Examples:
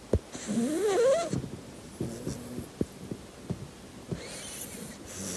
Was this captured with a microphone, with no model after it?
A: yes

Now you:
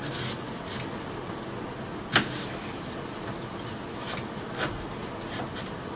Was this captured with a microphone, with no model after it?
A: yes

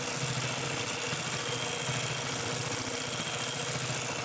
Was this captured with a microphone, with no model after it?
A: yes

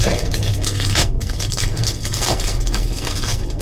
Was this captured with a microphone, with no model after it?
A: no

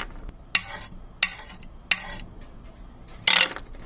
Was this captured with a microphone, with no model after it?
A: yes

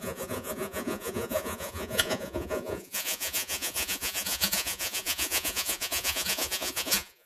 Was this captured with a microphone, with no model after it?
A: no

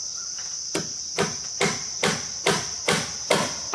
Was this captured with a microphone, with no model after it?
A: yes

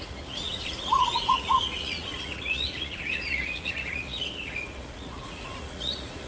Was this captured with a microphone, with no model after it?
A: no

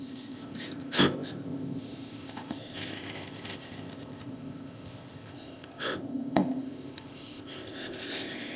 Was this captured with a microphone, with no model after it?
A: no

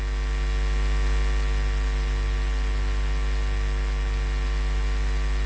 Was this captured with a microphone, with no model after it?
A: yes